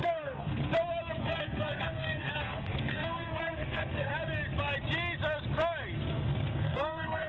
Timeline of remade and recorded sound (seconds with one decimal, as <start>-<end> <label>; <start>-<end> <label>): 0.0-0.7 remade; 0.7-1.2 recorded; 1.2-4.1 remade; 4.1-6.1 recorded; 6.1-7.3 remade